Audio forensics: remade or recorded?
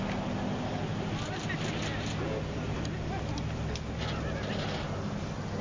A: recorded